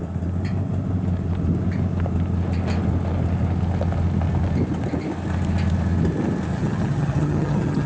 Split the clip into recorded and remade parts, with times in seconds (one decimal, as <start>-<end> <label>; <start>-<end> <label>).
0.0-6.5 recorded; 6.5-7.9 remade